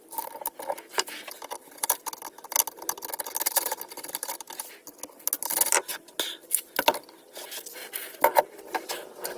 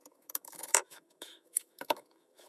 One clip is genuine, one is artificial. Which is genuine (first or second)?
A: first